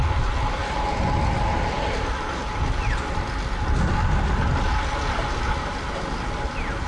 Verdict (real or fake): real